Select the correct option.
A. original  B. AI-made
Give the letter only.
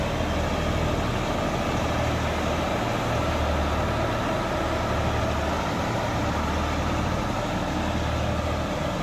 A